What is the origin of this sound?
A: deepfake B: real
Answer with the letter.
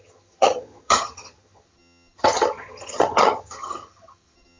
A